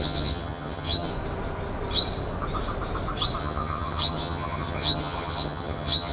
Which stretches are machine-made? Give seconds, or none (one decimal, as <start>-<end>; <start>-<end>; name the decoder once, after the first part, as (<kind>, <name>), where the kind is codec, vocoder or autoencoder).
0.0-1.1 (vocoder, HiFi-GAN); 3.4-6.1

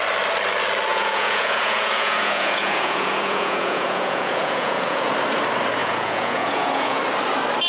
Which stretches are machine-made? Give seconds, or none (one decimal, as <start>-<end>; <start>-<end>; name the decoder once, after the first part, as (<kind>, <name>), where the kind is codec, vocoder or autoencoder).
0.9-5.1 (vocoder, Vocos); 5.8-7.0

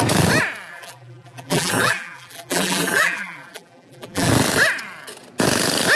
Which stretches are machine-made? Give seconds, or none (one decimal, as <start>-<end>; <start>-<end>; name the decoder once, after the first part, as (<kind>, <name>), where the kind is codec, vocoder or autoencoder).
0.7-4.3 (vocoder, BigVGAN v2)

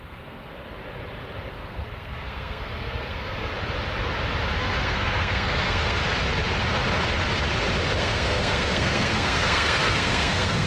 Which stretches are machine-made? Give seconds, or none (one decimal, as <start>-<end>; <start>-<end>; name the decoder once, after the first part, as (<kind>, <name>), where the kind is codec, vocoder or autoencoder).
0.0-0.5 (codec, SNAC); 1.5-3.5; 4.6-6.0; 8.0-10.7

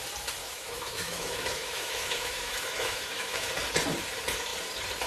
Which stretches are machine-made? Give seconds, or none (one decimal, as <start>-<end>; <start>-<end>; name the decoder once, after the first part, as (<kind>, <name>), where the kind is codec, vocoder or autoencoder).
0.4-3.5 (autoencoder, DAC-VAE)

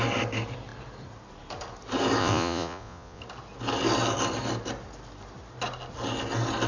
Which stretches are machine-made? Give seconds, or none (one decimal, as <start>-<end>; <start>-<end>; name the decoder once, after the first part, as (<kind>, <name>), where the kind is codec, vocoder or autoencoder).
2.2-3.2 (vocoder, Vocos)